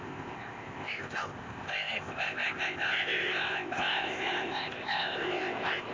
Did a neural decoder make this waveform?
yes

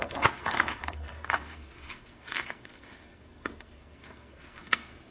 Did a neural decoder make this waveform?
yes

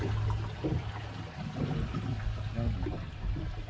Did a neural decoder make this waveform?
no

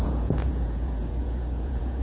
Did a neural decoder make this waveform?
yes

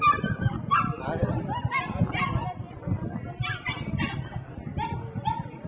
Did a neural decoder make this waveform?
no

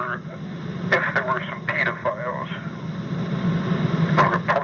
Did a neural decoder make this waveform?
no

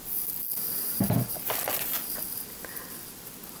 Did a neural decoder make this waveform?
no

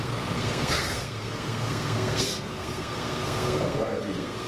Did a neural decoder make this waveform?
yes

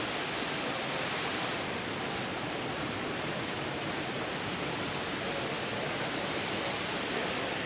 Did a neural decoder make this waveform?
no